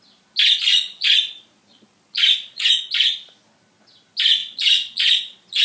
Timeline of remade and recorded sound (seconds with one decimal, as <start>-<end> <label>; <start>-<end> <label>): 0.0-0.7 recorded; 0.7-2.8 remade; 2.8-4.4 recorded; 4.4-5.6 remade